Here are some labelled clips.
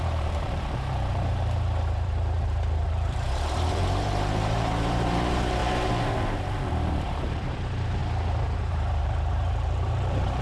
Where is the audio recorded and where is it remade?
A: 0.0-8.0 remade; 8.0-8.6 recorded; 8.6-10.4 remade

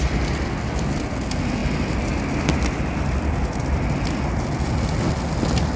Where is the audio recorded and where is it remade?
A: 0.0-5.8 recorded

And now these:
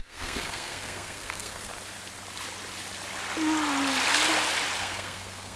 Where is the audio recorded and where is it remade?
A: 0.0-1.7 remade; 1.7-4.8 recorded; 4.8-5.6 remade

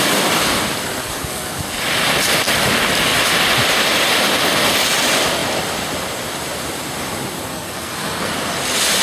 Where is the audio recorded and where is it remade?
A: 0.0-1.0 recorded; 1.0-1.8 remade; 1.8-7.5 recorded; 7.5-8.3 remade; 8.3-9.0 recorded

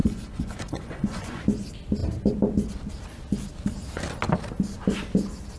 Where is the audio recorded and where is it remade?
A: 0.0-1.4 remade; 1.4-5.6 recorded

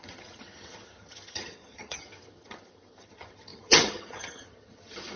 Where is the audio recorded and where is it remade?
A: 0.0-5.2 remade

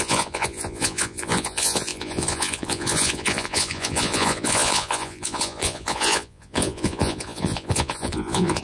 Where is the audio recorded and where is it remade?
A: 0.0-8.6 remade

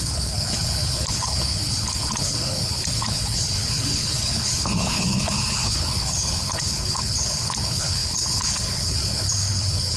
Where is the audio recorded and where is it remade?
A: 0.0-10.0 remade